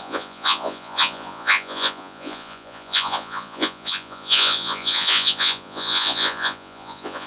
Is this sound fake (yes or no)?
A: yes